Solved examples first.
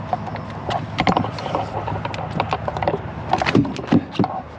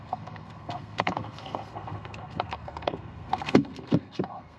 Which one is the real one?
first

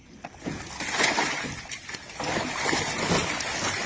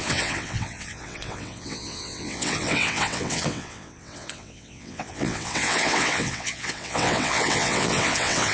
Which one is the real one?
first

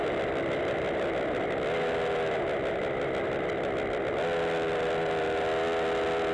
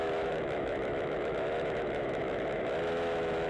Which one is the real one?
first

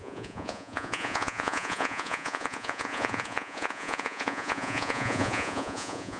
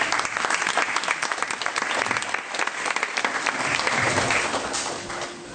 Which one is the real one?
second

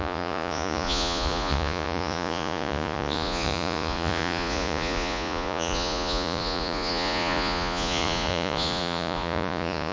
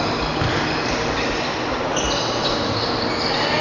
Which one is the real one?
second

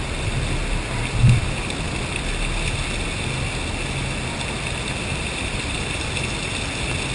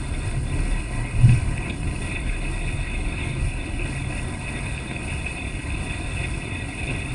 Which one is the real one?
first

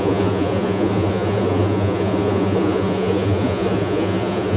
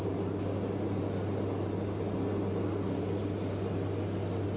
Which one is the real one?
second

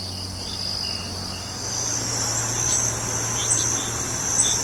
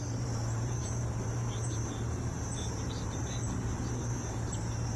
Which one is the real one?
first